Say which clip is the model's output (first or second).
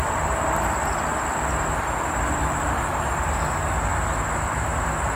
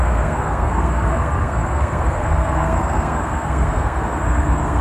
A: second